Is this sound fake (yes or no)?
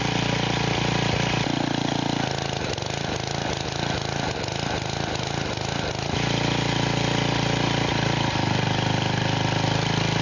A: no